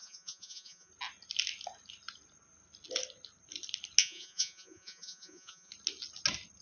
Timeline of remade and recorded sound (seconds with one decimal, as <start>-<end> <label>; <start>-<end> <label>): 0.0-0.9 remade; 0.9-4.0 recorded; 4.0-5.7 remade; 5.7-6.6 recorded